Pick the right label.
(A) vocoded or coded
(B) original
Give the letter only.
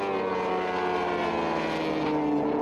B